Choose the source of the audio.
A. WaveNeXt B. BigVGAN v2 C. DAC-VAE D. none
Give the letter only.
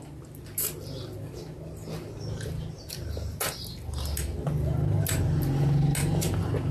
D